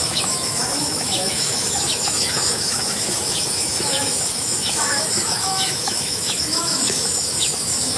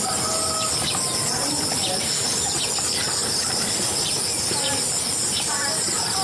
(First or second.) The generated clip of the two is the first